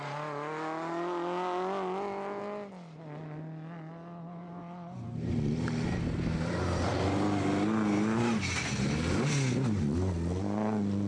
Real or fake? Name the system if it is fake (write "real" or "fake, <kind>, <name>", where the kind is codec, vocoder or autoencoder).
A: real